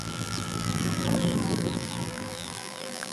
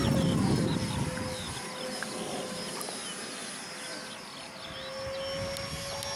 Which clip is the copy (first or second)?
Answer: first